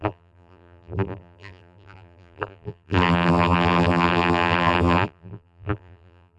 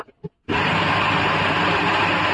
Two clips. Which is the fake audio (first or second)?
first